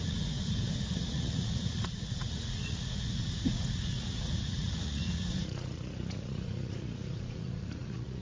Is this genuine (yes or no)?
no